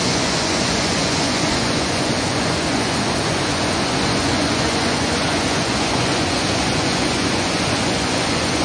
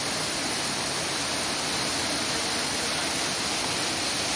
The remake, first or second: first